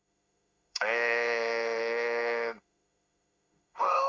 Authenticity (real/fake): fake